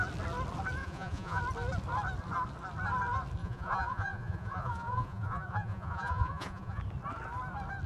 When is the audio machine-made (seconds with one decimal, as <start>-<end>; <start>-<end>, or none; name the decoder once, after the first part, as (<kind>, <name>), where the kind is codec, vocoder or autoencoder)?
0.8-1.4 (vocoder, Vocos); 3.4-6.8